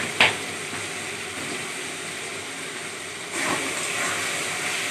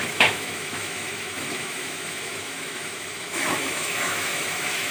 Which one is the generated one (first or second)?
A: second